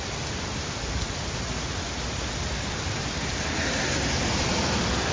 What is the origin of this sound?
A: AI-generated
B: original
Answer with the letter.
B